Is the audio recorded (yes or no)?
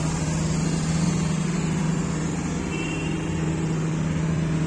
yes